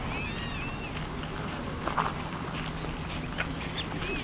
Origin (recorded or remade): recorded